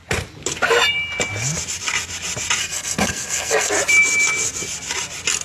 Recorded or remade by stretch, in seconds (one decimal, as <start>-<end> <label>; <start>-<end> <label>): 0.0-2.6 recorded; 2.6-3.7 remade; 3.7-5.4 recorded